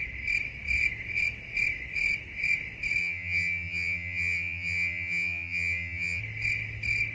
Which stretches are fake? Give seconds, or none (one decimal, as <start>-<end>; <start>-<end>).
3.0-6.2

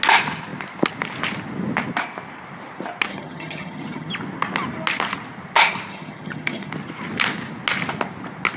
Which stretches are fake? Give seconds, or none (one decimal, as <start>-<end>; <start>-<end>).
3.1-4.1; 5.9-6.7

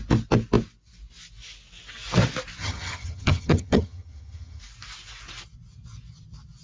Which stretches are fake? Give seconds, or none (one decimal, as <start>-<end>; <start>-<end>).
2.6-4.6

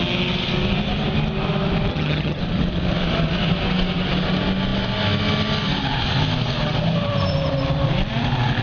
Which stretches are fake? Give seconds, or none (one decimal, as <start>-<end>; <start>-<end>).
1.9-2.4

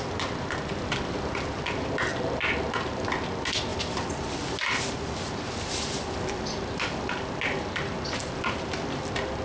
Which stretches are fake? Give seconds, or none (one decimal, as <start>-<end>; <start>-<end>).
none

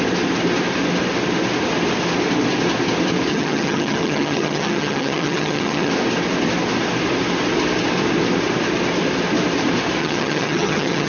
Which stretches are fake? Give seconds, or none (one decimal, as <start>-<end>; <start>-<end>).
3.3-5.9; 10.0-11.1

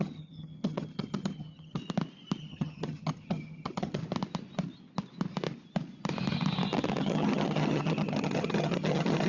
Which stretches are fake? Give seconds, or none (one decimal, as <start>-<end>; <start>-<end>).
0.0-1.8; 2.4-4.0; 7.0-9.3

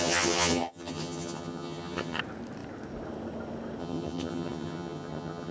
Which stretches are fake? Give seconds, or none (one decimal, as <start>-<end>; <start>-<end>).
0.0-2.2; 3.8-5.5